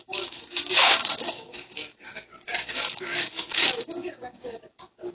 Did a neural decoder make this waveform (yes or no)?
yes